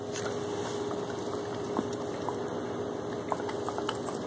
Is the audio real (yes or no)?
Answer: yes